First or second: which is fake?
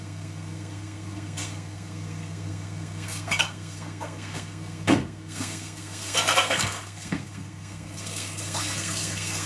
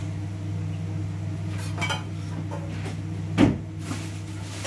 first